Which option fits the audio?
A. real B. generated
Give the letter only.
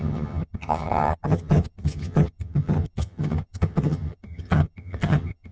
B